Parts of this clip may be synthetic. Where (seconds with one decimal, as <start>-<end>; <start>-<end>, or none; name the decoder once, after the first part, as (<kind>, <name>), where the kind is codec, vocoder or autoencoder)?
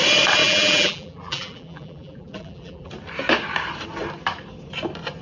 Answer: 0.4-2.9 (vocoder, BigVGAN v2)